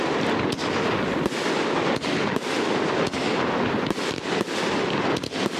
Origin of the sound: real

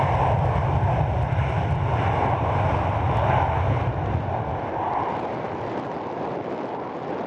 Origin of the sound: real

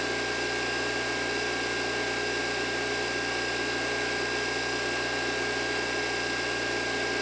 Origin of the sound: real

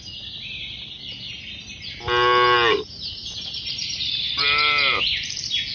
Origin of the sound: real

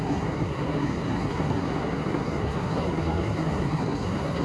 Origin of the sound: fake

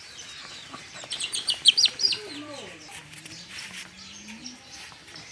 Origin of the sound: fake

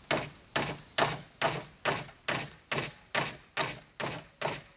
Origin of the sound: real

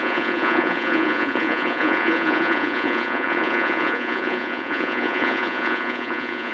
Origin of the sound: fake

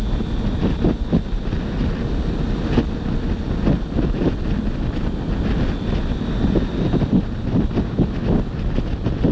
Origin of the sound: real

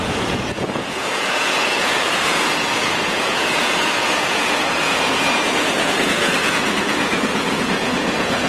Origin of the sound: fake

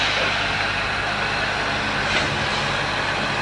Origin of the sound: real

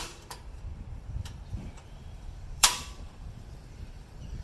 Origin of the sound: fake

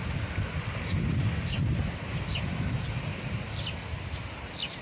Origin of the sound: real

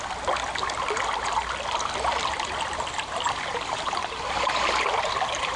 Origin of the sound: real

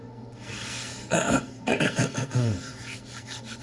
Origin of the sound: fake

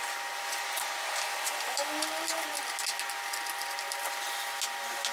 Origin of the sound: real